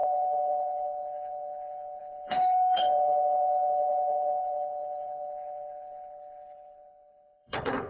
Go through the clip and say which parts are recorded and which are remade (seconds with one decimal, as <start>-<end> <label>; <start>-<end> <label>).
0.0-7.9 remade